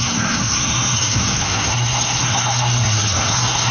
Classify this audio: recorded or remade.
remade